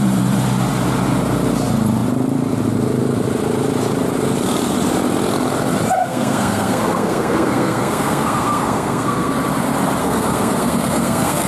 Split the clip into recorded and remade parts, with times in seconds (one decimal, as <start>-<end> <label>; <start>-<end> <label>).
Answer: 0.0-6.0 recorded; 6.0-9.3 remade; 9.3-10.0 recorded; 10.0-11.5 remade

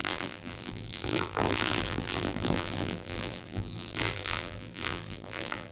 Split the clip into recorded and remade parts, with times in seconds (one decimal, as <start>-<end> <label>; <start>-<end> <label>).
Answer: 0.0-5.7 remade

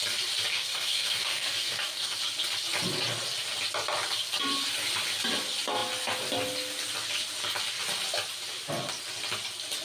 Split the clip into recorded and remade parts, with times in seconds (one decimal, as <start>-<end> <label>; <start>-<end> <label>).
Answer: 0.0-0.5 recorded; 0.5-2.2 remade; 2.2-9.8 recorded

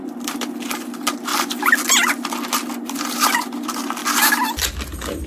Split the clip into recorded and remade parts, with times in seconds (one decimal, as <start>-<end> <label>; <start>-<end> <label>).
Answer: 0.0-5.3 recorded

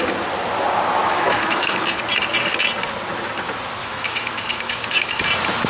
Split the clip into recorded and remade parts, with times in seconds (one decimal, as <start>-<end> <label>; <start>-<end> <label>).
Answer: 0.0-1.0 recorded; 1.0-2.0 remade; 2.0-3.8 recorded; 3.8-5.2 remade; 5.2-5.7 recorded

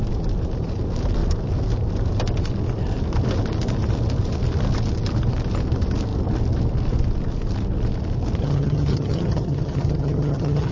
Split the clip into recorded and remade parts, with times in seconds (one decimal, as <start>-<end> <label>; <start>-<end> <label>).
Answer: 0.0-8.4 recorded; 8.4-10.7 remade

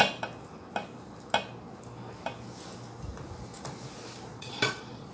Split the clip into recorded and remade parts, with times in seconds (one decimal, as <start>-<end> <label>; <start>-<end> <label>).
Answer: 0.0-4.3 recorded; 4.3-5.1 remade